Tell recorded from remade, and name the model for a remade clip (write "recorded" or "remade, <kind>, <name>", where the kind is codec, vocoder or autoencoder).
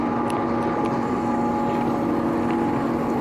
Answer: recorded